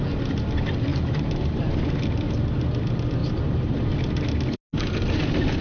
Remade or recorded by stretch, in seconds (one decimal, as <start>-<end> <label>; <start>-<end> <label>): 0.0-0.9 recorded; 0.9-1.7 remade; 1.7-3.2 recorded; 3.2-3.8 remade; 3.8-5.6 recorded